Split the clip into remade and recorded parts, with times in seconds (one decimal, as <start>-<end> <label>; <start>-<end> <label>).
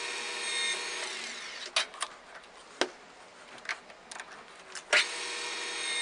0.0-6.0 recorded